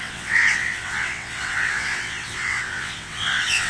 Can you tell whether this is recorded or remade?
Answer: remade